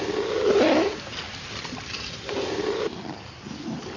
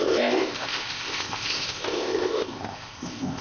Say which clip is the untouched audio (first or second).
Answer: first